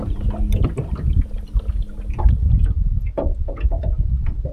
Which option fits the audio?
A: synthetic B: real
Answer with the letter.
B